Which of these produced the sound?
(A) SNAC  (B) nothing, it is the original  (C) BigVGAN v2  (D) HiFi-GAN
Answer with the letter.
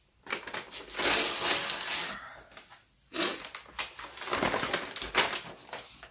B